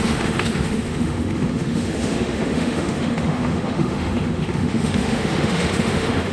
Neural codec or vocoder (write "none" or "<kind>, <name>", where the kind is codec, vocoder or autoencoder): autoencoder, DAC-VAE